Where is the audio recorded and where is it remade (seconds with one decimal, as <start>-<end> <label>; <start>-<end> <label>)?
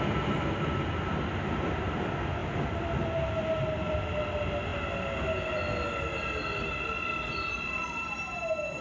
0.0-8.8 recorded